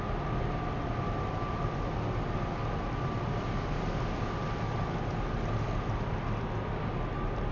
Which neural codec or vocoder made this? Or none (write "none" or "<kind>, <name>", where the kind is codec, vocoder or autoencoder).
none